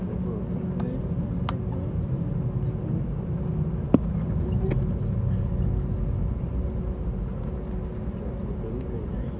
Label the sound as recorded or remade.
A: recorded